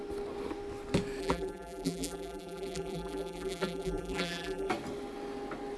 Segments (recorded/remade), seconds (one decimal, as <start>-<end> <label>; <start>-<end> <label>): 0.0-1.2 recorded; 1.2-4.7 remade; 4.7-5.8 recorded